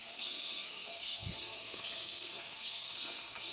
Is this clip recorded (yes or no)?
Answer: no